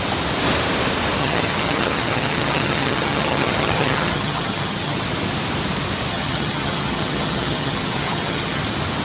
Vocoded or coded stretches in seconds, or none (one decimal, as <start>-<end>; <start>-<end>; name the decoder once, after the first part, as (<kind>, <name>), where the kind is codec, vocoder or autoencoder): 1.2-5.0 (vocoder, HiFi-GAN); 6.1-8.6